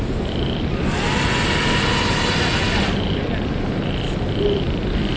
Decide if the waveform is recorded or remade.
recorded